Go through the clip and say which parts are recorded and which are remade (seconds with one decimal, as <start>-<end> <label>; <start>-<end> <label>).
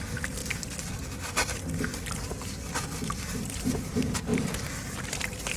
0.0-5.6 recorded